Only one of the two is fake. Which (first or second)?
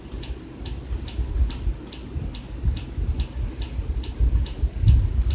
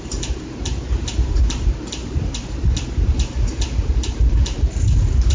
second